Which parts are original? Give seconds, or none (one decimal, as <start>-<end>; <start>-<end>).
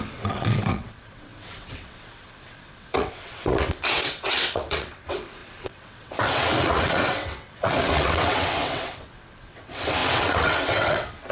none